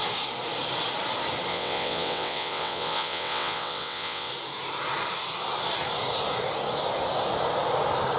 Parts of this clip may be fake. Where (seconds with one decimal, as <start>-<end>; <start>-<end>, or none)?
1.5-4.3